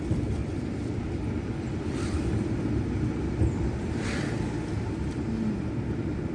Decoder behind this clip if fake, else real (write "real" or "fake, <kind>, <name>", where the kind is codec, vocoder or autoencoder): real